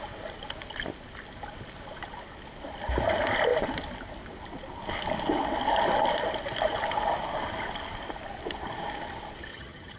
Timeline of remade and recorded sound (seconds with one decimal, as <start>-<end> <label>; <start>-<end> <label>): 0.0-9.5 recorded; 9.5-10.0 remade